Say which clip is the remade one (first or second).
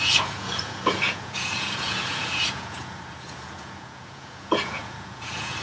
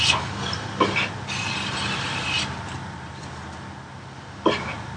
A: first